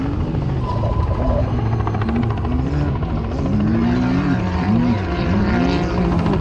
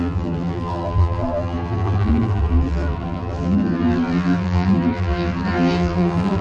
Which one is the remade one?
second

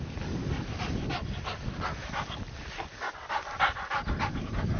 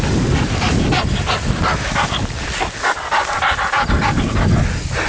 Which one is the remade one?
first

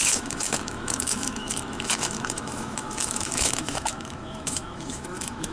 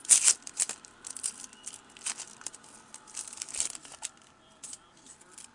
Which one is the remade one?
first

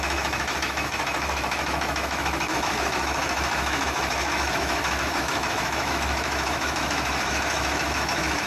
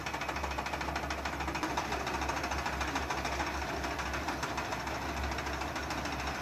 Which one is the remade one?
first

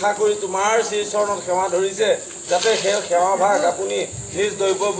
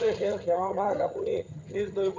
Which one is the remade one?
second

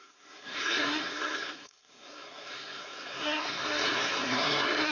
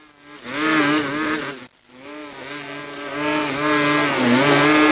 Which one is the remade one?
first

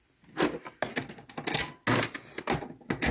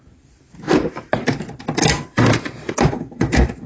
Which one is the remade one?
second